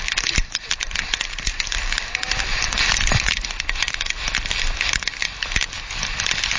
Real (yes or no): yes